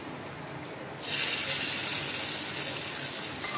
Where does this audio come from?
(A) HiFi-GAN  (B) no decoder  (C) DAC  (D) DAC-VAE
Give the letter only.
B